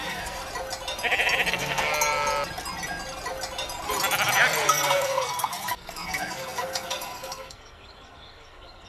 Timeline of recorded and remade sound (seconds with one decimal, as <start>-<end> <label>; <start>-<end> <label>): 0.0-0.4 remade; 0.4-1.5 recorded; 1.5-1.9 remade; 1.9-4.7 recorded; 4.7-8.9 remade